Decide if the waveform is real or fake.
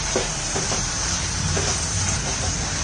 fake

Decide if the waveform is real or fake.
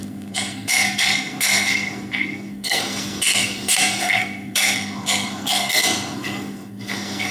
fake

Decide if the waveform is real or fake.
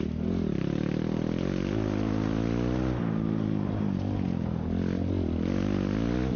real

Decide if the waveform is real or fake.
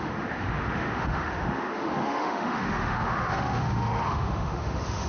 fake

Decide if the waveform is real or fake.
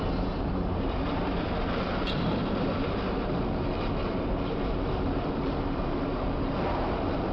fake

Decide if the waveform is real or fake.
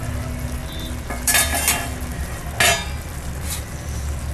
real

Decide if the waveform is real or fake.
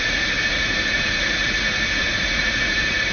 fake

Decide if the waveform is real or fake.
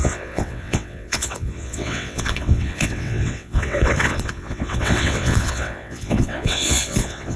fake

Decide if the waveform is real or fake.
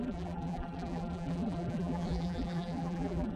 fake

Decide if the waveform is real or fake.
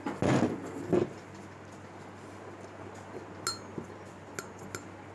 real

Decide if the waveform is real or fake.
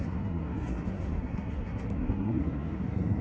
fake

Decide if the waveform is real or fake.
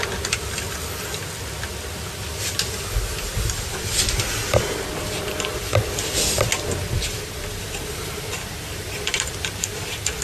real